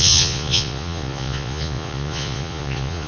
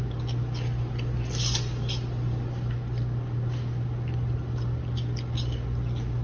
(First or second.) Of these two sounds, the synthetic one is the first